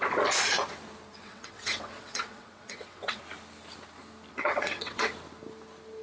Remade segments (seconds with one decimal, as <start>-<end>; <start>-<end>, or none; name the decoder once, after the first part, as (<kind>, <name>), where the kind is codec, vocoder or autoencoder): 1.2-3.2 (vocoder, WaveNeXt); 4.3-5.1